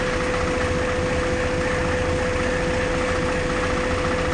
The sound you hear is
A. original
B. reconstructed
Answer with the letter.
A